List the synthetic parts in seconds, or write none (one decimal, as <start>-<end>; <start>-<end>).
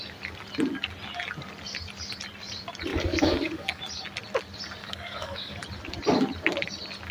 2.9-3.8; 4.8-5.6